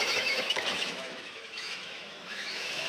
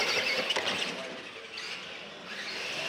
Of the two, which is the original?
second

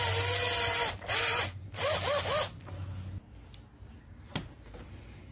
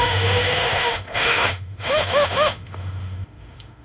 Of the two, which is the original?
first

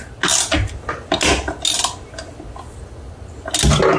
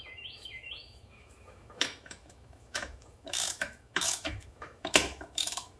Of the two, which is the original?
first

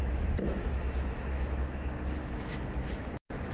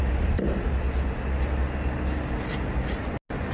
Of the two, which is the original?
second